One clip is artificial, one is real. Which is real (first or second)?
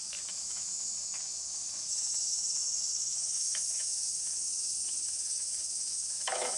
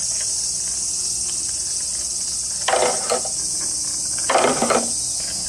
second